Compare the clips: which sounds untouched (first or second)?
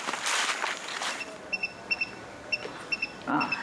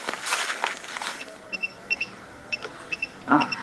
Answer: first